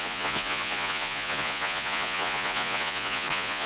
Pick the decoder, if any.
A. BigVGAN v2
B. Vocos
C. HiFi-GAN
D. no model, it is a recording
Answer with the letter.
B